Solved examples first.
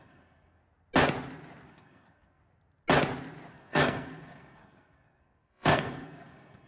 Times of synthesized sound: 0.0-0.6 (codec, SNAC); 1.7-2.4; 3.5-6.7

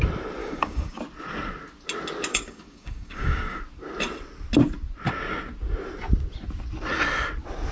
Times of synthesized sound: 0.4-1.0 (codec, DAC); 2.3-3.6

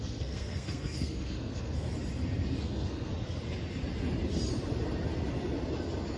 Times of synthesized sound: 0.0-1.9 (codec, SNAC); 2.6-3.1

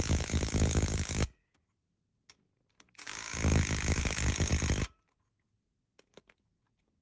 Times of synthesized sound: 0.0-4.5 (codec, DAC); 5.3-7.0